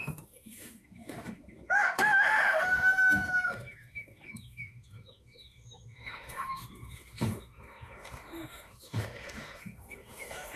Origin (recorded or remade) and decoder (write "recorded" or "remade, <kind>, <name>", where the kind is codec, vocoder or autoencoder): remade, autoencoder, DAC-VAE